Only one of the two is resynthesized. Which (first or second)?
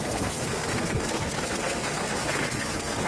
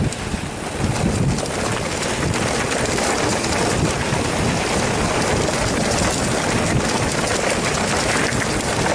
first